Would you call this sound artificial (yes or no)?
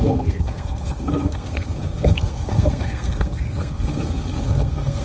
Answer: yes